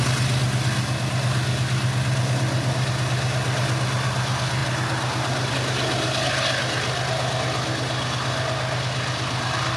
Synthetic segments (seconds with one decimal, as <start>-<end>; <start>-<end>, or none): none